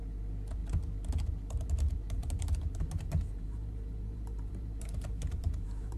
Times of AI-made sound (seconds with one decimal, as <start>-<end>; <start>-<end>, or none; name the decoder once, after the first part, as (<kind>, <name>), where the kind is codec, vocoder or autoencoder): 2.2-6.0 (vocoder, BigVGAN v2)